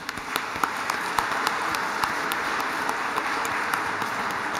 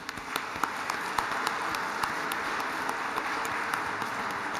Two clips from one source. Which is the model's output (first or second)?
first